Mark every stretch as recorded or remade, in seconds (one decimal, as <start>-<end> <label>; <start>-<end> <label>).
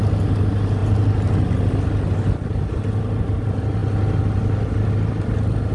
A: 0.0-5.7 recorded